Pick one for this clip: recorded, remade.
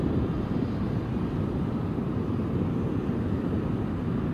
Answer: remade